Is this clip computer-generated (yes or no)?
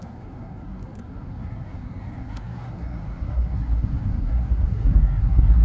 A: yes